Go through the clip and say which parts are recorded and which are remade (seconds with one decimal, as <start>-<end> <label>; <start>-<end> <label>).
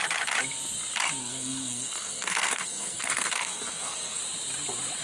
0.0-1.2 recorded; 1.2-4.2 remade; 4.2-5.0 recorded